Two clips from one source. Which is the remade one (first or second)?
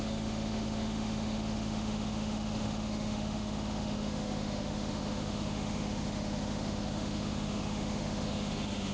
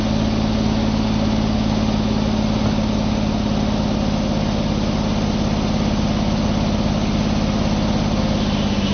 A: first